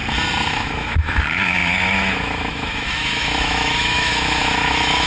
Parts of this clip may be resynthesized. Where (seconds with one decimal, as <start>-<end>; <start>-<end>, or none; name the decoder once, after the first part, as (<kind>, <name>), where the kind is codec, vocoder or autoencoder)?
0.5-5.1 (autoencoder, DAC-VAE)